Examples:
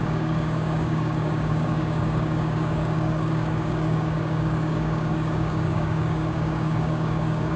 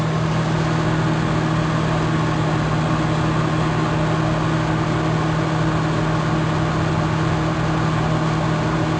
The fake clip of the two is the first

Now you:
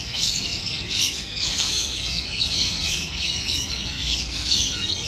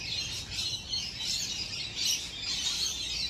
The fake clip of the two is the first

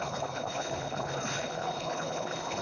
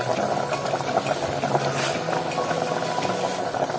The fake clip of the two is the first